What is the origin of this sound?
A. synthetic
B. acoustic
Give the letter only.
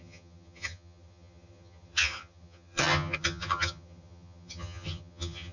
A